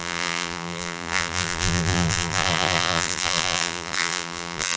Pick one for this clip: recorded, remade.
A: remade